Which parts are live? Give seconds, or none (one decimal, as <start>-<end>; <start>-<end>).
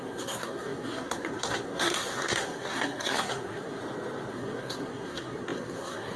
3.8-4.3